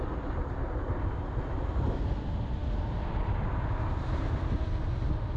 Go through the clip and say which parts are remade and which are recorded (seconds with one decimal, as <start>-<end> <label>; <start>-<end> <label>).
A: 0.0-5.4 recorded